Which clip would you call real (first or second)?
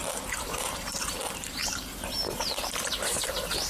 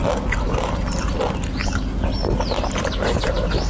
second